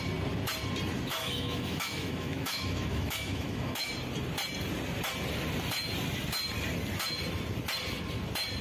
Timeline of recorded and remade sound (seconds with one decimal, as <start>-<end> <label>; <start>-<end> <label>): 0.0-1.1 recorded; 1.1-3.9 remade; 3.9-8.6 recorded